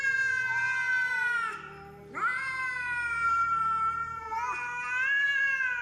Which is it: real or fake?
real